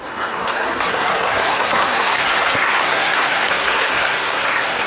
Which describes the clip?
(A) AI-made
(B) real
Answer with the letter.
A